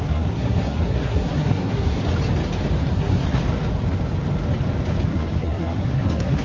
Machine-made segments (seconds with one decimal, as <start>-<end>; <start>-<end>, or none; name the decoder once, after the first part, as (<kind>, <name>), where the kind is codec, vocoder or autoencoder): 0.0-2.0 (codec, SNAC); 2.9-3.4; 5.1-6.4